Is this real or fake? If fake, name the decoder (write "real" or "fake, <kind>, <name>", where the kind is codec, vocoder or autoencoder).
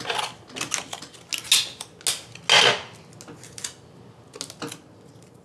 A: real